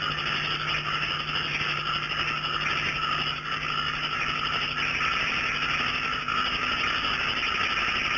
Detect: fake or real real